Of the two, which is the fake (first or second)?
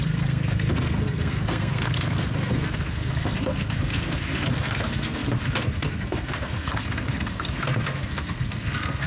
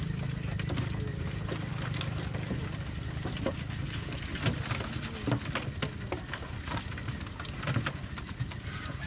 first